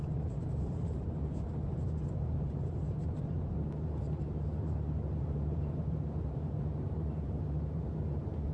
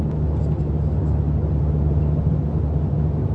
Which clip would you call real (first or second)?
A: second